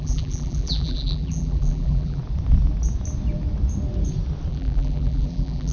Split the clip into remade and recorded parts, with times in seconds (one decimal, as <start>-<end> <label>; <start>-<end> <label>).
0.0-2.2 remade; 2.2-4.5 recorded; 4.5-5.7 remade